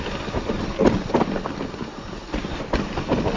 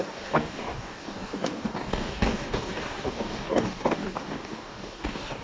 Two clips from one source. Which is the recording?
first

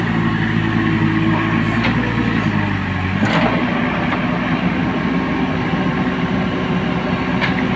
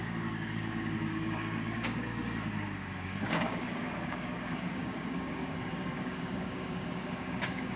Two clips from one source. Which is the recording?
first